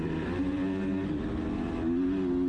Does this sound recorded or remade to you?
recorded